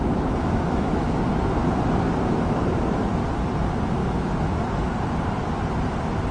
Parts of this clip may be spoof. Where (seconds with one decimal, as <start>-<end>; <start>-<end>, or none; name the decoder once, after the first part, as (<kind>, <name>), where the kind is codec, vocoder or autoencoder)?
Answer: 0.0-1.2 (autoencoder, DAC-VAE); 2.3-3.1; 4.0-4.6

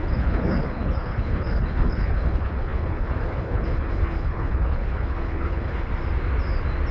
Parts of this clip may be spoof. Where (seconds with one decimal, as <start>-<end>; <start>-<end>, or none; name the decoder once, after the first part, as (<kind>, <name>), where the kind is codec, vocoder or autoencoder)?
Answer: 0.0-5.9 (codec, HILCodec)